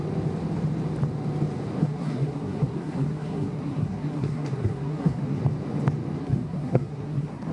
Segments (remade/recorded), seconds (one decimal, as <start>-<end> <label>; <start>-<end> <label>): 0.0-1.8 recorded; 1.8-5.4 remade; 5.4-6.2 recorded; 6.2-7.5 remade